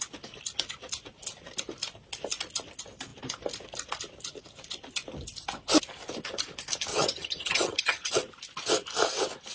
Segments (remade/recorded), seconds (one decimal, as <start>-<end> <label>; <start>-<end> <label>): 0.0-6.9 recorded; 6.9-8.1 remade; 8.1-9.5 recorded